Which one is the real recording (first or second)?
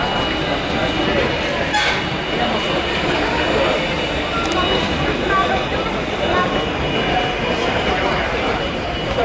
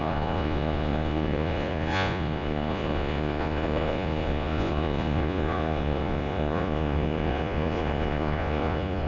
first